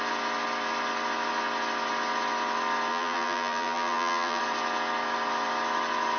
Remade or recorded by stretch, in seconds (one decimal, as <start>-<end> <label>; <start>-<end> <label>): 0.0-2.9 recorded; 2.9-4.4 remade; 4.4-6.2 recorded